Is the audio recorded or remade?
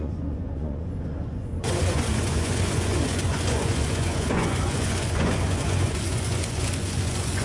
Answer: remade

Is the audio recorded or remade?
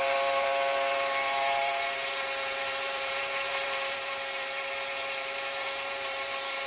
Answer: remade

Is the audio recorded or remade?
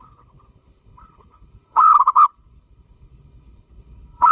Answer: remade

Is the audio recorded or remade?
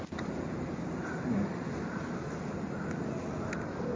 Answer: recorded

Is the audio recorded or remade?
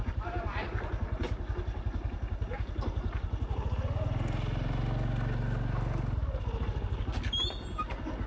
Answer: recorded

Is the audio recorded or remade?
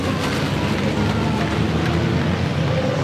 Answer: recorded